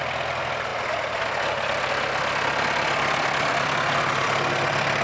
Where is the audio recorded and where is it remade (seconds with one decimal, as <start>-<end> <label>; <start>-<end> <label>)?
0.0-5.0 recorded